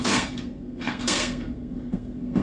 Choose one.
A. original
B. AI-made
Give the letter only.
B